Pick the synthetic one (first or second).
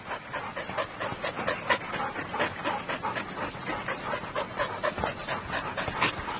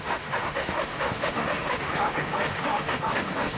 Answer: second